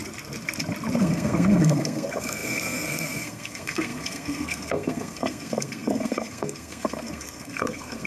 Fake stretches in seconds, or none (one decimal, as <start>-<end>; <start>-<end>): 1.0-8.1